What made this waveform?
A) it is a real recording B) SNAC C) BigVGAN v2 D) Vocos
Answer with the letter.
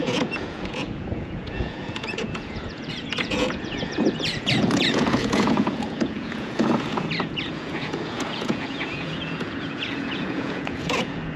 D